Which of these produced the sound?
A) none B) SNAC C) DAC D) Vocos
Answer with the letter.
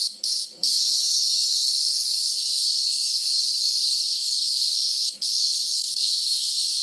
C